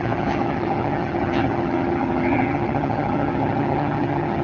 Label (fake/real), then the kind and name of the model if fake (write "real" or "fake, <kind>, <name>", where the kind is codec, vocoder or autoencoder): fake, vocoder, HiFi-GAN